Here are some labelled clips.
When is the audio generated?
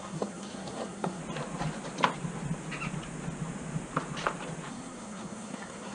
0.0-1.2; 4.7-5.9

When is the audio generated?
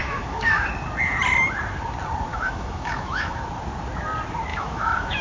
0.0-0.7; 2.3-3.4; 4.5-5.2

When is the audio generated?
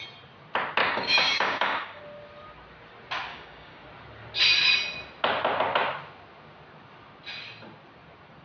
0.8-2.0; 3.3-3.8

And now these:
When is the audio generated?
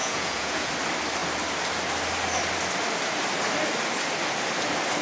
0.0-0.7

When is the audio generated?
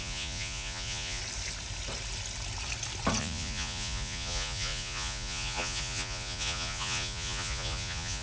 0.0-1.2; 3.2-8.2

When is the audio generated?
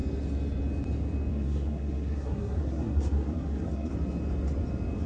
1.3-3.9